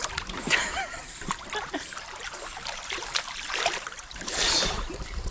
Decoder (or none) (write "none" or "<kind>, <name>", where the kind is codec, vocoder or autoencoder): vocoder, BigVGAN v2